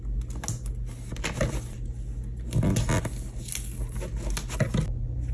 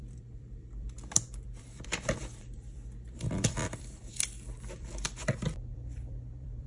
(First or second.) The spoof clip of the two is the second